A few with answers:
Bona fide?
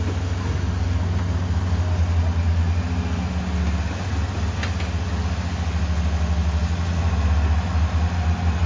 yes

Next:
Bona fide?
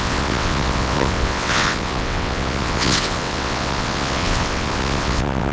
no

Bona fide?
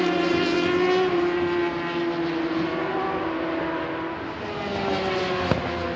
yes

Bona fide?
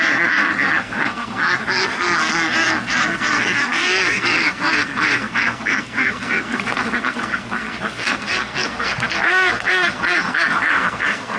no